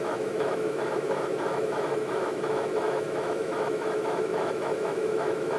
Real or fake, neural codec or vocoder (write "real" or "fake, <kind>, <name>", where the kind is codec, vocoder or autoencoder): fake, autoencoder, DAC-VAE